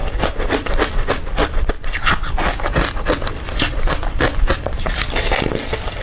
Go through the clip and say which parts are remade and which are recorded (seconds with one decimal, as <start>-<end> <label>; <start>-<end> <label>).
0.0-6.0 recorded